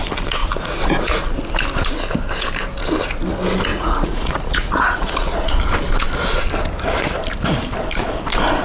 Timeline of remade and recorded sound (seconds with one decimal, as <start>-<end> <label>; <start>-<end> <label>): 0.0-0.4 recorded; 0.4-1.3 remade; 1.3-3.7 recorded; 3.7-5.6 remade; 5.6-8.6 recorded